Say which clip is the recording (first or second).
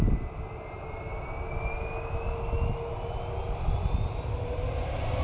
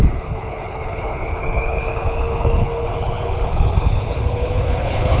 first